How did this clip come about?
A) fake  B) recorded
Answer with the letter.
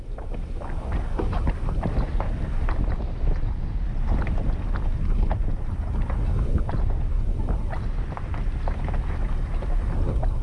B